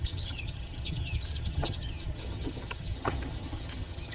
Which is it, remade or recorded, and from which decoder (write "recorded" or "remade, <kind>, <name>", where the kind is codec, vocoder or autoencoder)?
remade, vocoder, HiFi-GAN